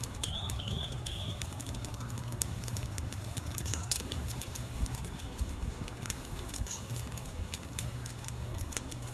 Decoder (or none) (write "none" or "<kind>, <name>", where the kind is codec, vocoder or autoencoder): codec, SNAC